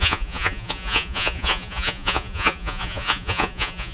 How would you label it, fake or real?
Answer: fake